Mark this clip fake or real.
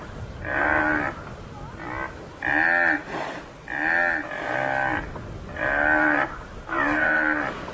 real